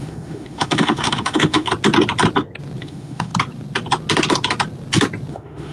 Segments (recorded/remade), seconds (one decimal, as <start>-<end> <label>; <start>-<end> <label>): 0.0-1.7 remade; 1.7-2.8 recorded; 2.8-3.3 remade; 3.3-5.3 recorded; 5.3-5.7 remade